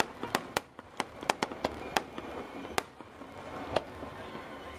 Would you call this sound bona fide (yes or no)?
yes